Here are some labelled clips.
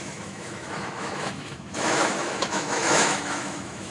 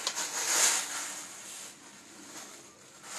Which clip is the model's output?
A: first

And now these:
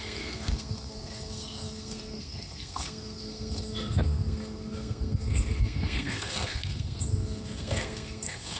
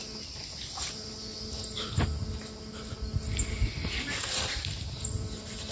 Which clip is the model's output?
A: first